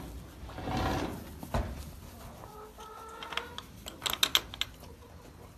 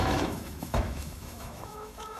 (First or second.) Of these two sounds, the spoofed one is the second